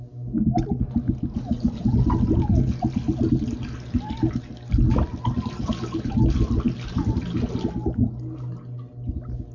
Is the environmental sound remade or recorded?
recorded